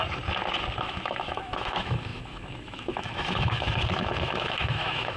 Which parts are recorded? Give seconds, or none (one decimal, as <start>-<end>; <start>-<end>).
0.0-0.8